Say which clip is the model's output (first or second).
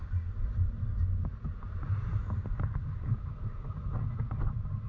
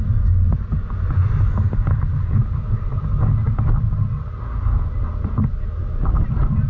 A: first